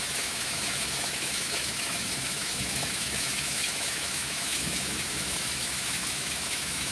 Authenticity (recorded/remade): remade